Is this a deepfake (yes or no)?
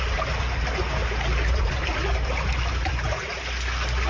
no